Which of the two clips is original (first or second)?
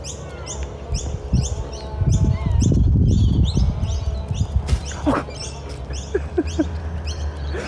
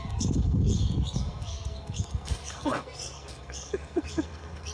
first